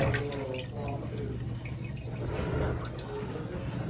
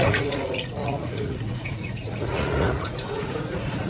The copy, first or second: second